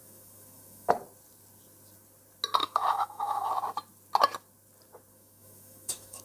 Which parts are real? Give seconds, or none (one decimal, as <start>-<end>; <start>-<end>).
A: 0.9-2.6; 3.5-5.1